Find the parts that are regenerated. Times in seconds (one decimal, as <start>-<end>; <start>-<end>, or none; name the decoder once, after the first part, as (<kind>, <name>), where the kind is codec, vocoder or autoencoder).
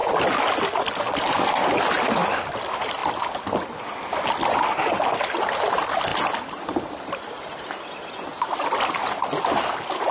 none